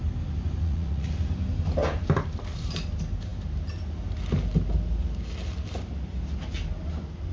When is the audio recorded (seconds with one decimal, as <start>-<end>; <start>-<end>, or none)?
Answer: 0.0-0.6; 1.1-7.3